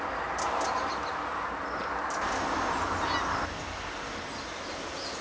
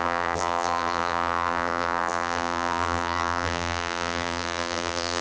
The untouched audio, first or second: first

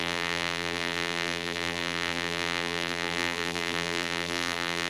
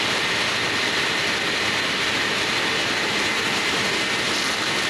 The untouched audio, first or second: second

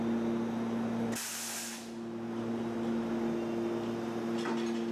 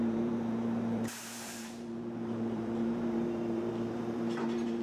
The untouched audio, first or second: first